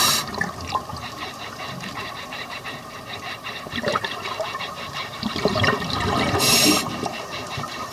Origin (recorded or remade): remade